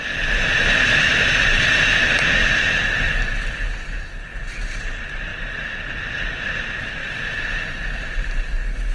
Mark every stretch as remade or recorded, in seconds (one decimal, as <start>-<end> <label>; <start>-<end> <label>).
0.0-1.1 recorded; 1.1-1.7 remade; 1.7-5.3 recorded; 5.3-6.6 remade; 6.6-7.0 recorded; 7.0-8.5 remade; 8.5-8.9 recorded